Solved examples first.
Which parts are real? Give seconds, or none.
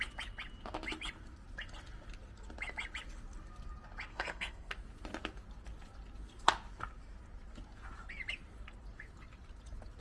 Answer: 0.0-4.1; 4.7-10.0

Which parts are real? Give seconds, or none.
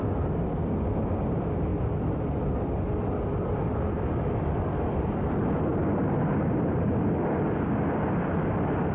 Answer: 0.0-1.7; 4.6-5.7; 6.2-8.9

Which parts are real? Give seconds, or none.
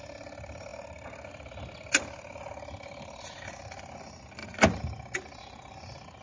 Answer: 0.0-6.2